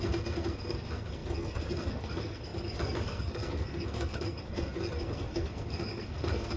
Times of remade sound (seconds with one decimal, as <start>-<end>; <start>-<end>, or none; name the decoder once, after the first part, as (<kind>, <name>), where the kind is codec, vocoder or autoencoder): 0.0-6.6 (codec, SNAC)

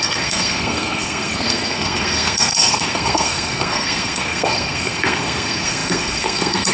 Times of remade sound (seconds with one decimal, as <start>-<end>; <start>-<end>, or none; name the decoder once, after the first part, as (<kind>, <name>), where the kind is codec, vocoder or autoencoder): 0.0-6.7 (codec, SNAC)

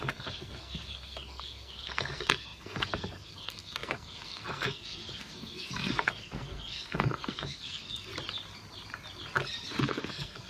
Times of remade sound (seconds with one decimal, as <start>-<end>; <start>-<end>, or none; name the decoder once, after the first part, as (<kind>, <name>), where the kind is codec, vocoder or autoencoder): 0.0-8.1 (codec, SNAC); 9.8-10.5

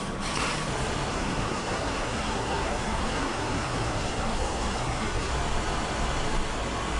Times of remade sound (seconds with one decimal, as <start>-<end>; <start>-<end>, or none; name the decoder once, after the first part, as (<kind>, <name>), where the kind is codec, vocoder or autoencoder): 1.1-5.3 (codec, SNAC)

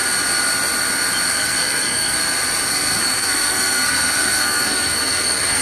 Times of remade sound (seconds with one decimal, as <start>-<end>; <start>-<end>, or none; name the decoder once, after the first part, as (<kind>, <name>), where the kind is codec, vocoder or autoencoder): 1.3-2.2 (codec, SNAC); 2.7-5.6

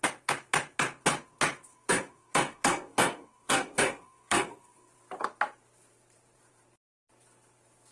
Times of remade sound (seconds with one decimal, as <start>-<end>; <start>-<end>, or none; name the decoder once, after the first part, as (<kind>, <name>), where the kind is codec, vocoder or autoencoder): 1.7-4.9 (codec, SNAC)